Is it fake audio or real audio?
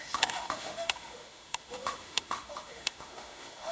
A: fake